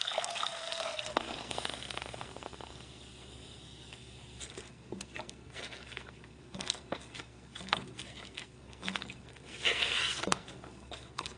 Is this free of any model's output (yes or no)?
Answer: no